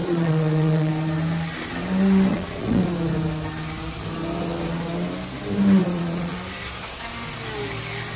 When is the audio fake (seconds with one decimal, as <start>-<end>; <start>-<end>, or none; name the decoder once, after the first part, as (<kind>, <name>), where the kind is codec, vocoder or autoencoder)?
0.0-0.9 (vocoder, Vocos); 2.3-2.9; 5.8-6.3